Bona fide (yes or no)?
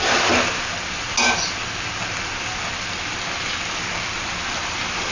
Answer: yes